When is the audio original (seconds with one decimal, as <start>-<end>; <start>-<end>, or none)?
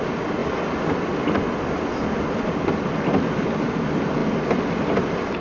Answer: 0.0-5.4